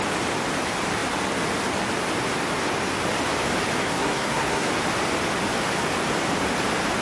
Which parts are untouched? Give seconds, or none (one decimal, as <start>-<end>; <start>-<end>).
0.0-3.8; 4.7-7.0